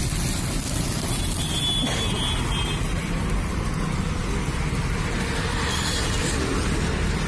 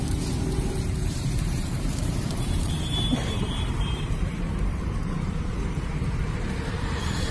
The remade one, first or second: second